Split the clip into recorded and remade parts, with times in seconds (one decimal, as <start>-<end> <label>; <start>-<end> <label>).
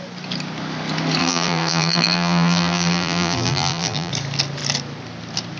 0.0-1.2 recorded; 1.2-4.1 remade; 4.1-5.6 recorded